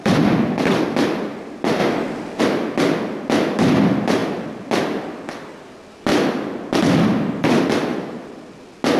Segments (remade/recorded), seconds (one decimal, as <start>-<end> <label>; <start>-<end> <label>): 0.0-1.8 recorded; 1.8-2.4 remade; 2.4-4.2 recorded; 4.2-4.8 remade; 4.8-6.1 recorded; 6.1-6.8 remade; 6.8-9.0 recorded